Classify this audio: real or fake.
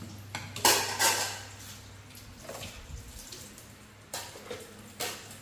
real